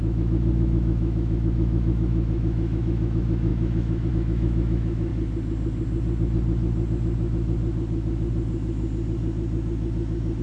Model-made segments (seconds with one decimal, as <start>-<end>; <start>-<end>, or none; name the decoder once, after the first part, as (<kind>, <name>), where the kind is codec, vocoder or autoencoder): 0.0-5.1 (autoencoder, DAC-VAE)